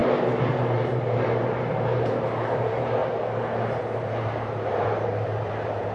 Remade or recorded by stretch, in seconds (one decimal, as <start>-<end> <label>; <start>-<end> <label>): 0.0-0.5 recorded; 0.5-5.9 remade